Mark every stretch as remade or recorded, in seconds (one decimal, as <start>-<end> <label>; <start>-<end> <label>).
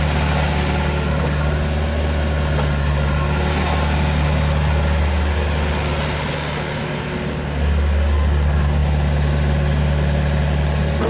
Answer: 0.0-11.1 recorded